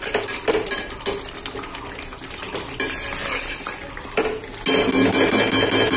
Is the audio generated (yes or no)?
no